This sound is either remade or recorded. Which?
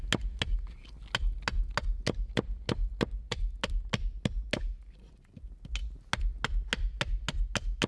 recorded